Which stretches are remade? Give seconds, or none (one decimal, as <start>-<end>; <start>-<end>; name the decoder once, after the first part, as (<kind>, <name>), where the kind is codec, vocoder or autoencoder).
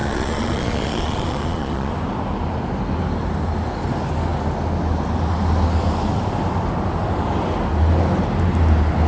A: 0.0-1.9 (vocoder, Vocos)